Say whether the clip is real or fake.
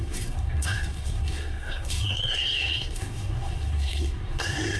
fake